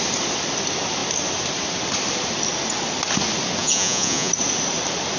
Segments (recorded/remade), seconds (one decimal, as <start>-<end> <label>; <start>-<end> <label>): 0.0-3.6 recorded; 3.6-4.3 remade; 4.3-5.2 recorded